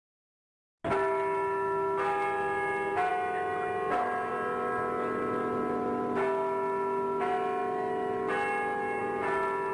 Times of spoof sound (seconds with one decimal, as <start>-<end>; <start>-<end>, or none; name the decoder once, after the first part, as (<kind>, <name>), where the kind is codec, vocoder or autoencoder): none